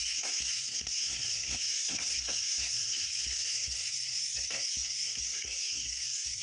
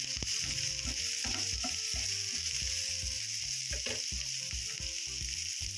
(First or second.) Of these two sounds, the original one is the second